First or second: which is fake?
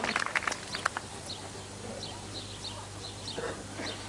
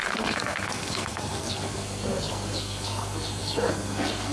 second